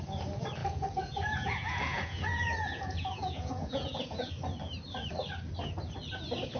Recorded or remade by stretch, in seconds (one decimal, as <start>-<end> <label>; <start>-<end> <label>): 0.0-0.6 recorded; 0.6-4.3 remade; 4.3-6.6 recorded